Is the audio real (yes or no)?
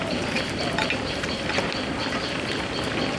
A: no